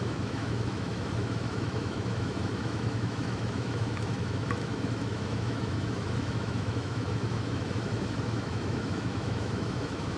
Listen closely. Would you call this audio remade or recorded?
remade